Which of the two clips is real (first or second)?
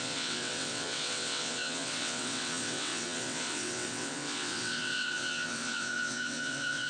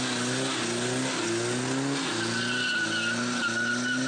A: second